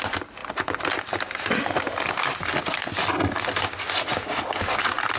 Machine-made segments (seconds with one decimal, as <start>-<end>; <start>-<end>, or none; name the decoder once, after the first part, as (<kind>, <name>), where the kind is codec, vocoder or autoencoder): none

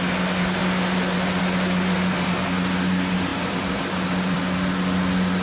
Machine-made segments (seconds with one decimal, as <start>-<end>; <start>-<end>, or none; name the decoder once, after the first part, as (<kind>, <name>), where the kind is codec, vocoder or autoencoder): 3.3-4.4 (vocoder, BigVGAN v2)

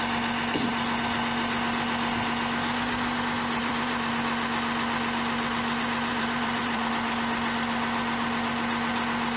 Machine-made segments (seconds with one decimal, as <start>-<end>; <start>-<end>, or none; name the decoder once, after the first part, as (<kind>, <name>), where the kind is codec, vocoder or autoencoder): 3.6-4.1 (vocoder, BigVGAN v2); 6.1-6.9